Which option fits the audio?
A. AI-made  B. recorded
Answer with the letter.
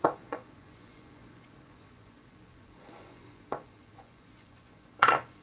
A